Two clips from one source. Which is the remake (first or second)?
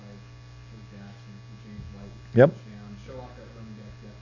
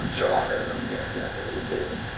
second